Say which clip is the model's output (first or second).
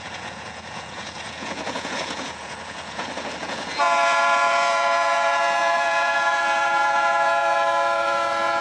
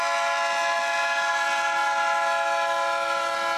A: first